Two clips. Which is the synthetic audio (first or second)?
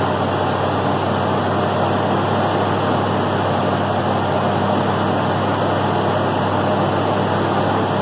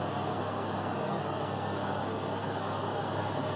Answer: second